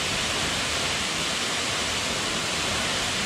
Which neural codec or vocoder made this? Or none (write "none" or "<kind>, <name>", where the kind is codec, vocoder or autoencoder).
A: none